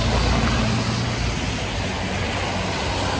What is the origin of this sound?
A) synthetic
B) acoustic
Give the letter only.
B